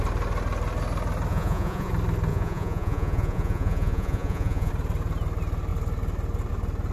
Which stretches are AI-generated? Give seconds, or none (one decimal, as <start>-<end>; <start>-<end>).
1.3-1.9; 2.3-4.7